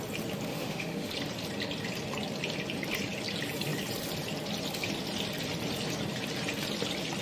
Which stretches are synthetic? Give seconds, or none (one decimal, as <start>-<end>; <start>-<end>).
0.5-1.1